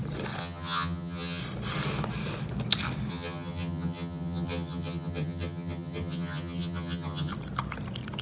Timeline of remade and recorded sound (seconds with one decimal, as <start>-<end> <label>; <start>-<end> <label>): 0.0-0.4 recorded; 0.4-1.4 remade; 1.4-3.1 recorded; 3.1-7.3 remade; 7.3-8.2 recorded